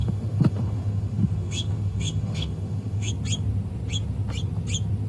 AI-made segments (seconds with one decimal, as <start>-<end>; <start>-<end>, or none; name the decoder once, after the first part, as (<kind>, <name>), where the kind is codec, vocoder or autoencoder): 0.0-3.1 (autoencoder, DAC-VAE)